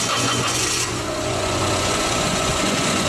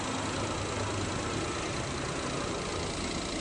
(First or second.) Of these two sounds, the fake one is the first